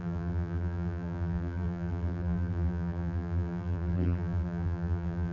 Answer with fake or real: fake